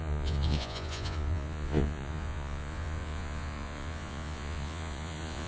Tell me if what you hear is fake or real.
fake